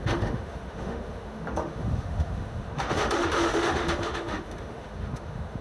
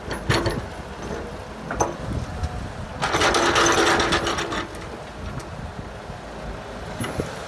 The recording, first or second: second